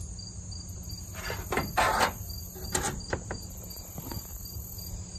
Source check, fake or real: real